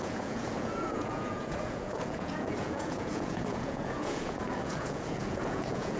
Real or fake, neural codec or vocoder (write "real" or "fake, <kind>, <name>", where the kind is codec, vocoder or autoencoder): fake, vocoder, Vocos